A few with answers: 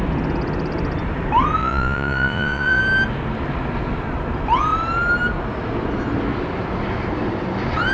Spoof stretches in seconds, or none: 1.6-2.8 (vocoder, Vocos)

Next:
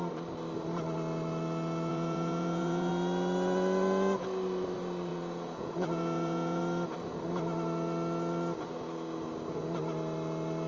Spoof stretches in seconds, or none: 1.9-2.9 (vocoder, Vocos); 5.1-6.6

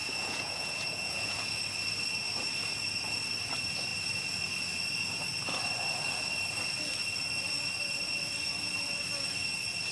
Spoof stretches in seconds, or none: 0.0-1.6 (vocoder, Vocos)

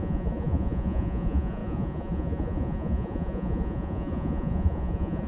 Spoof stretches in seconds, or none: 0.0-5.3 (vocoder, Vocos)